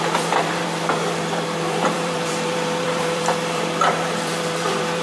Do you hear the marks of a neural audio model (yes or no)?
yes